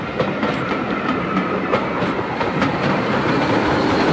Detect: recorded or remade remade